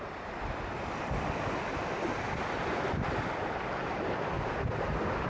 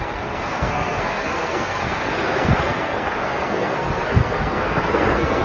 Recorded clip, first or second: first